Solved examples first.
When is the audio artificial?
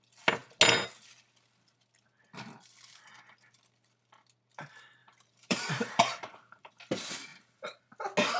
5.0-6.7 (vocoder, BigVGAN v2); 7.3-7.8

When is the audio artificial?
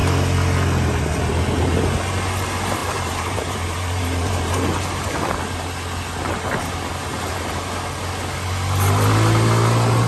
2.8-5.4 (vocoder, BigVGAN v2)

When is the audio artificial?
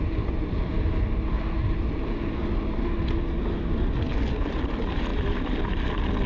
0.0-0.7 (vocoder, BigVGAN v2); 4.5-6.3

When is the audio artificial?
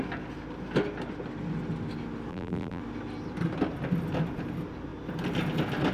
2.3-2.8 (vocoder, BigVGAN v2)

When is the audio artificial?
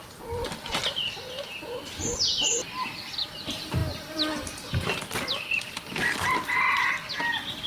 none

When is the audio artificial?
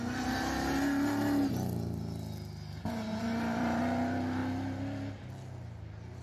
3.1-3.8 (vocoder, BigVGAN v2)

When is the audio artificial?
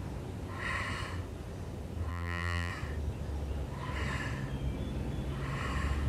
2.1-2.7 (vocoder, BigVGAN v2)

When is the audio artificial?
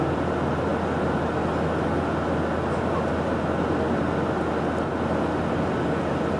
none